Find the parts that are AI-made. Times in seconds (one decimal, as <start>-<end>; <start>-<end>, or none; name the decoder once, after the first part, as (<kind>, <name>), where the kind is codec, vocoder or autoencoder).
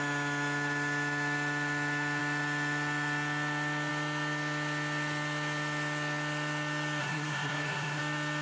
7.0-8.0 (codec, SNAC)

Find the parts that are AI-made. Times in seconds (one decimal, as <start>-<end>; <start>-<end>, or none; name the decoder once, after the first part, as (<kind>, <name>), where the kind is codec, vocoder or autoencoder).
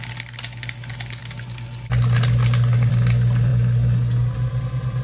none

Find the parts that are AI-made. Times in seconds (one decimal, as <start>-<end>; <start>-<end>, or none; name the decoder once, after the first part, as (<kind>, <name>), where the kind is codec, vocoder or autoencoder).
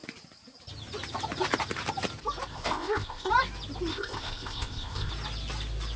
2.5-3.3 (codec, ZipCodec); 3.9-5.1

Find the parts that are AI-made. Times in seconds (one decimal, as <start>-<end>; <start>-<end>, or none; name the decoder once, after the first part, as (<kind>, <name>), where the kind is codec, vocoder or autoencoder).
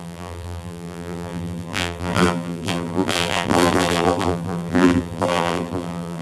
0.0-6.2 (vocoder, BigVGAN v2)